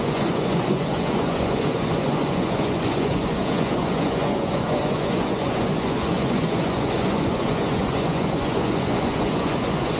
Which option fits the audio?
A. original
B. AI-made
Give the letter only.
B